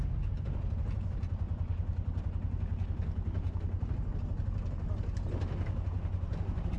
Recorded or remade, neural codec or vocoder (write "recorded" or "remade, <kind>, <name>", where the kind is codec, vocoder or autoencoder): recorded